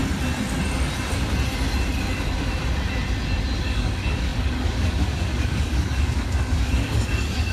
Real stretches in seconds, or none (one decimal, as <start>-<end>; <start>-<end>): 0.0-3.6